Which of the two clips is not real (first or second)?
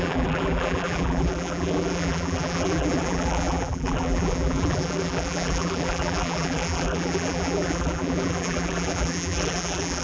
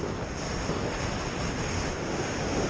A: first